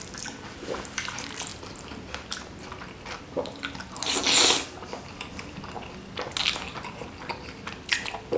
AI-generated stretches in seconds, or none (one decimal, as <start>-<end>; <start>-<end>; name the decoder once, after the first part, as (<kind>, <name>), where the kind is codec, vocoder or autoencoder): none